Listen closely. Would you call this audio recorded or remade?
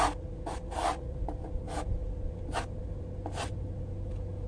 recorded